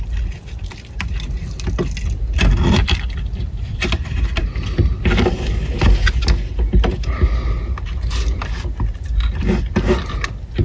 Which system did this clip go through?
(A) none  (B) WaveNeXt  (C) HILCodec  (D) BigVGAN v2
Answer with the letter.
A